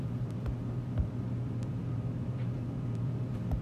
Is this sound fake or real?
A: fake